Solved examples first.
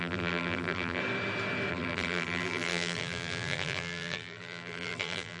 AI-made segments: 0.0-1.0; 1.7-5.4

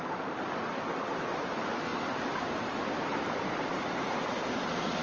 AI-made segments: none

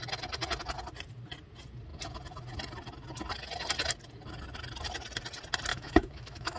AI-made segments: 5.7-6.6

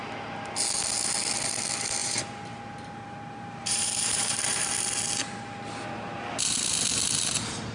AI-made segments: 2.0-4.7

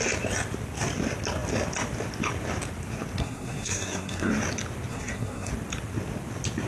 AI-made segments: 3.2-4.3; 4.9-5.5

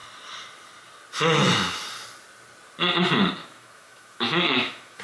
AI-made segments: 3.4-5.0